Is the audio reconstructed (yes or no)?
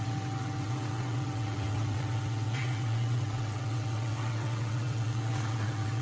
yes